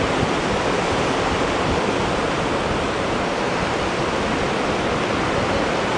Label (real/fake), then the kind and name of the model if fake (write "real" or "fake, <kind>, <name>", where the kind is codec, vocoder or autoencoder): real